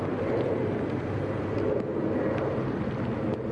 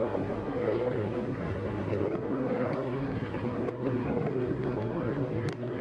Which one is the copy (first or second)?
second